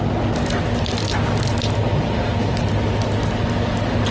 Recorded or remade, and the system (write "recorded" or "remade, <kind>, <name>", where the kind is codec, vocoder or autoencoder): recorded